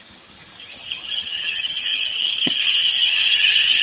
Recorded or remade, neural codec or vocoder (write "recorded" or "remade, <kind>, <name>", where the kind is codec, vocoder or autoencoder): remade, vocoder, HiFi-GAN